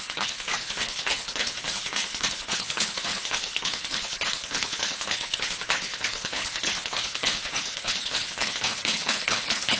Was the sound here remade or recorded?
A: remade